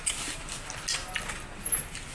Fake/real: real